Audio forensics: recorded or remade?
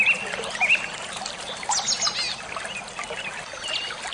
recorded